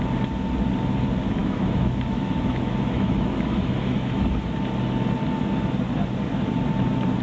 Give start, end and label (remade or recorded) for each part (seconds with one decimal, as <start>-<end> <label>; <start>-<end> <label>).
0.0-1.4 recorded; 1.4-4.3 remade; 4.3-7.2 recorded